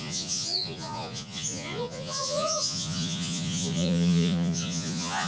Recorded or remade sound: remade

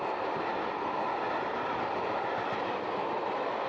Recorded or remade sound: recorded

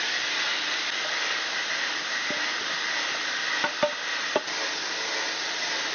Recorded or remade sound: recorded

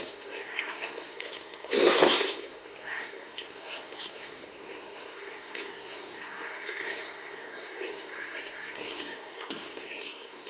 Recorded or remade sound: remade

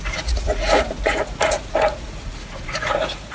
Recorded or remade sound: remade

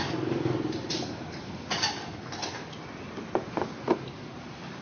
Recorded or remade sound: recorded